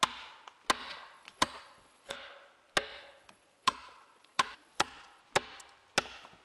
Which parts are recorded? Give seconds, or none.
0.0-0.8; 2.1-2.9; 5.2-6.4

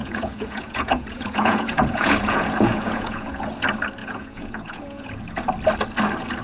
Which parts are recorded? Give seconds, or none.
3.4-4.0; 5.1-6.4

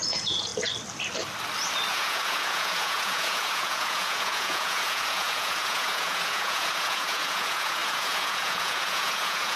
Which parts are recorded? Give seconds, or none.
0.5-1.9

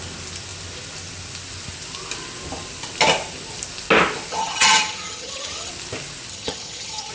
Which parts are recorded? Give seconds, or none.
0.0-4.3; 5.7-6.3